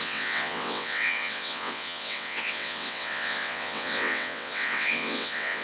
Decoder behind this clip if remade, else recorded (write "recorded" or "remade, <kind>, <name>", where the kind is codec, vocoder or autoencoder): remade, vocoder, WaveNeXt